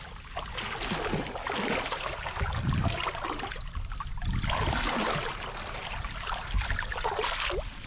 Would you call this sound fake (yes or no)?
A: no